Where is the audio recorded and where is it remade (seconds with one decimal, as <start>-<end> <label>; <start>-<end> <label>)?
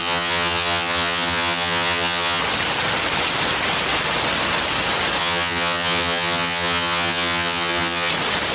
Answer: 0.0-2.4 remade; 2.4-5.2 recorded; 5.2-8.1 remade; 8.1-8.5 recorded